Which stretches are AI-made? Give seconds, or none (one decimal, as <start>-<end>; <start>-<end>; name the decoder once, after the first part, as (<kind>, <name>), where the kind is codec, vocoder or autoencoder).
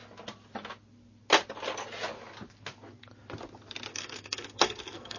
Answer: 3.9-5.2 (codec, SNAC)